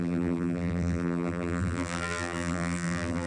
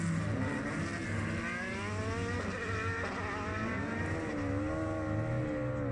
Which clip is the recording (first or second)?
second